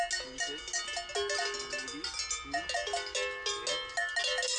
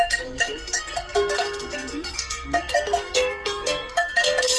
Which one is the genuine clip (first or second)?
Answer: first